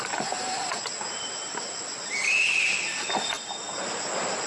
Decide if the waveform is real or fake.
real